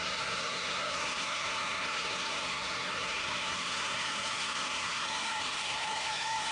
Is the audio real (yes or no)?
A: no